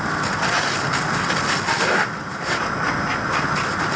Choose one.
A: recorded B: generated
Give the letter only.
A